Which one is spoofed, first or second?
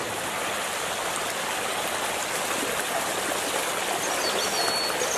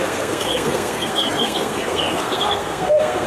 second